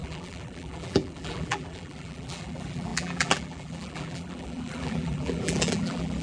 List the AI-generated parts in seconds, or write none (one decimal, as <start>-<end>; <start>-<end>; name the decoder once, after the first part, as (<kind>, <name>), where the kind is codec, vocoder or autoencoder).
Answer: 0.0-6.2 (vocoder, BigVGAN v2)